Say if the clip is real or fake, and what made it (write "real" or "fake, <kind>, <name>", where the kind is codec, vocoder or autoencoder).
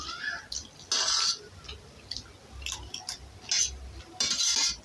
real